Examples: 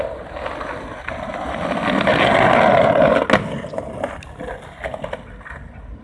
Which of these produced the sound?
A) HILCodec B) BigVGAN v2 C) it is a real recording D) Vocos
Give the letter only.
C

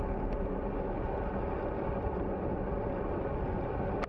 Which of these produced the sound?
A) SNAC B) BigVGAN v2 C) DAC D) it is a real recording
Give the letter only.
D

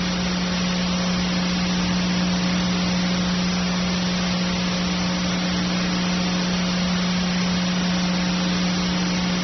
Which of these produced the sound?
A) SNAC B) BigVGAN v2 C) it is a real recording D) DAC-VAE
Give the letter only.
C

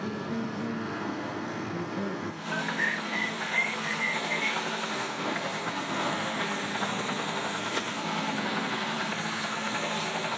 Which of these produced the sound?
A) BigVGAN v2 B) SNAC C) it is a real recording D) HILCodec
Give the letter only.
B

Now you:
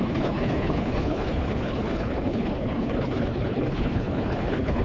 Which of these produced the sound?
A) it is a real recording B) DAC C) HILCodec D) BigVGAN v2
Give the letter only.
C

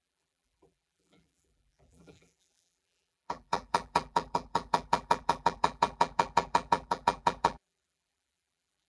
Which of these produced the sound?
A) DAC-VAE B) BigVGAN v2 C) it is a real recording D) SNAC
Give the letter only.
B